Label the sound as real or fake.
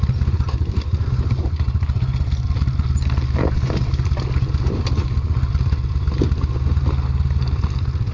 real